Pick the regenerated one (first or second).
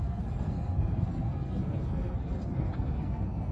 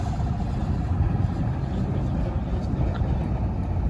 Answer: first